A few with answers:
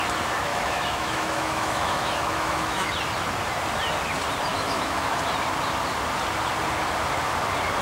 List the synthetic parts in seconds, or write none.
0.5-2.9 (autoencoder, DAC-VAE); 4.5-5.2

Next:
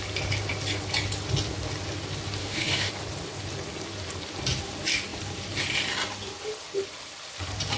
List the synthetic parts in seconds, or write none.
2.4-2.9 (autoencoder, DAC-VAE)

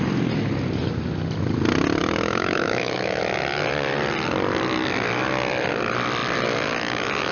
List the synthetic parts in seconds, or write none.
2.0-3.2 (autoencoder, DAC-VAE)

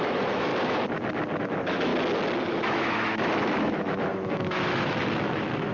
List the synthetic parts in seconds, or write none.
0.0-0.5 (autoencoder, DAC-VAE); 1.4-1.9; 2.5-5.7

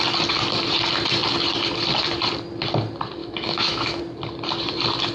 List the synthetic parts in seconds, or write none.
3.2-4.0 (autoencoder, DAC-VAE)

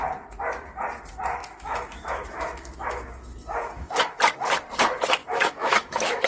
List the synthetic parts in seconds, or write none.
1.4-4.2 (autoencoder, DAC-VAE); 5.2-6.3

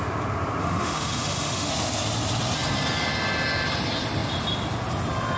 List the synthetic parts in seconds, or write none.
0.6-1.7 (autoencoder, DAC-VAE)

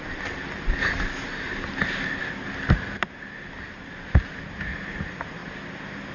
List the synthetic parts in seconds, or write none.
none